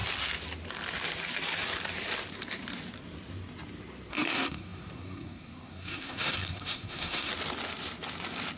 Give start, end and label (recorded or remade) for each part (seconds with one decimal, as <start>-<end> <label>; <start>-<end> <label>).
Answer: 0.0-4.1 recorded; 4.1-7.3 remade; 7.3-8.6 recorded